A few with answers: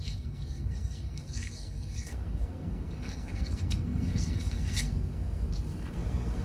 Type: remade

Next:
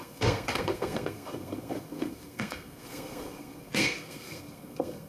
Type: remade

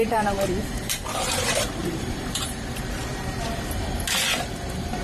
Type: remade